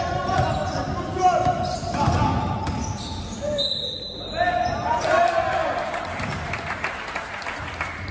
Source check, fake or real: real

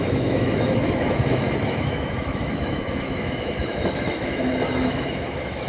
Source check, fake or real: fake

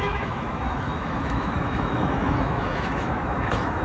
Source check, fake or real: fake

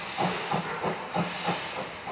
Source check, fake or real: real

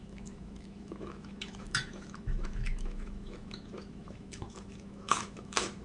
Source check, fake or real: fake